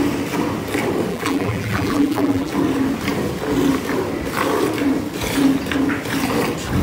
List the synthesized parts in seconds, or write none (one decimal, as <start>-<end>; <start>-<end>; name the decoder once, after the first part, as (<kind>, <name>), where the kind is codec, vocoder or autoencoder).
1.1-2.5 (vocoder, BigVGAN v2)